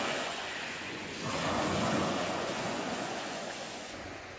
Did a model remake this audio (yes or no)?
yes